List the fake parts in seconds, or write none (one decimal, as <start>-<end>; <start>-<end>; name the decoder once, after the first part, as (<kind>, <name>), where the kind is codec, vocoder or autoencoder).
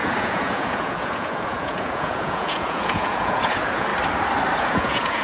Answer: 0.0-3.9 (vocoder, Vocos); 4.6-5.2